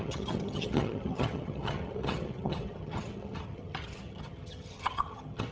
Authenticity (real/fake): fake